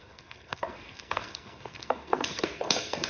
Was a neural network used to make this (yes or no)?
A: yes